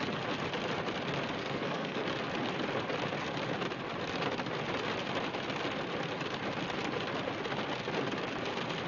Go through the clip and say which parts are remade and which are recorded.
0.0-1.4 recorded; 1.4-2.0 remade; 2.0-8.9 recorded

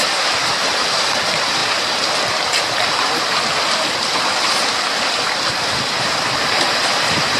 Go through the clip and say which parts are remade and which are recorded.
0.0-1.6 remade; 1.6-6.0 recorded; 6.0-7.4 remade